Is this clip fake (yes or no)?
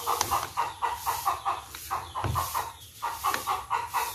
no